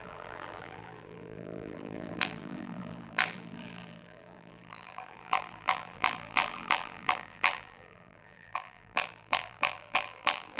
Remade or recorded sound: remade